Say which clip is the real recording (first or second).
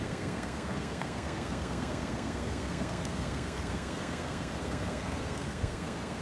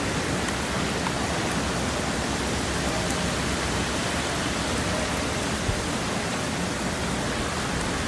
second